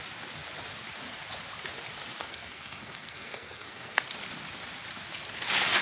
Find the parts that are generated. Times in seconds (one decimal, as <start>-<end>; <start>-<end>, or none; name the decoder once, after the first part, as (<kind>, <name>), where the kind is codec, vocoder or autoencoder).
2.2-4.0 (codec, SNAC)